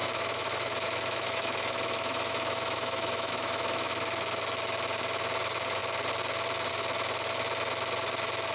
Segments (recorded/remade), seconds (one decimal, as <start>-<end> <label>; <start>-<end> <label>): 0.0-3.9 remade; 3.9-8.5 recorded